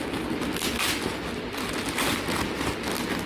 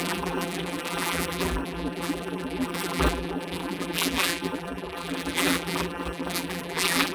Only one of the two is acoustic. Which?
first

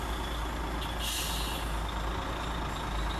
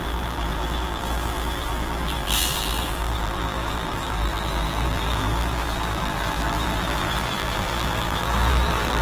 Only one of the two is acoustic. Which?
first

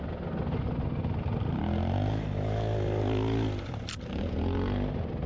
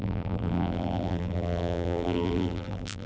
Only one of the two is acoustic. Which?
first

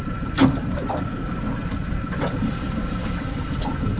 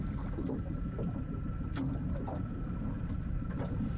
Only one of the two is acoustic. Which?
second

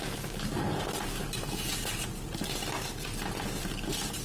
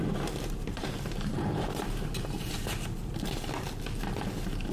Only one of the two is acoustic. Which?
first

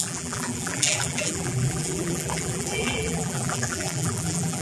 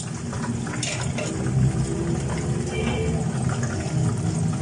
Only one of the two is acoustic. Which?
second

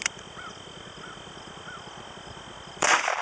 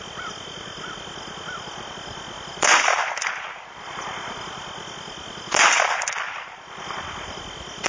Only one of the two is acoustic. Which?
second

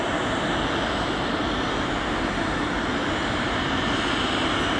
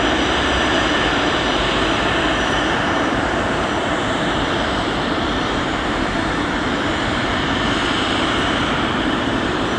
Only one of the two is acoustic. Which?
first